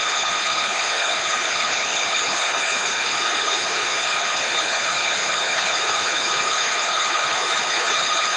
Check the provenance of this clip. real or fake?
fake